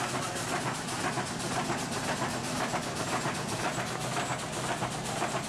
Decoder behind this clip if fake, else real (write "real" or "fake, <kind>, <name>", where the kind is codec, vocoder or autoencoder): real